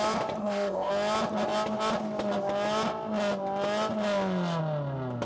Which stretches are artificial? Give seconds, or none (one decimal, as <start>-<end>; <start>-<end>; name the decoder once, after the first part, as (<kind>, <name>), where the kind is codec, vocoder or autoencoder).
0.4-0.9 (codec, ZipCodec)